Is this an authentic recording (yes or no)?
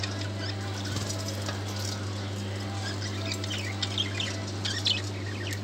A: yes